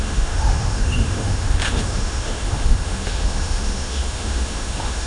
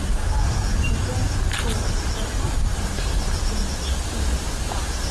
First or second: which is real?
second